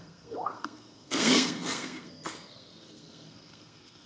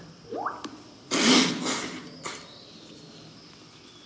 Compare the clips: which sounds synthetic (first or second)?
first